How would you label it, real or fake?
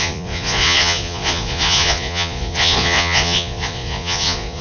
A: fake